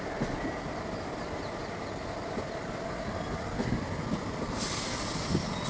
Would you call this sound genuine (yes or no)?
yes